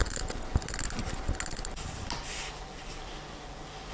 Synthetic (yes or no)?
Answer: no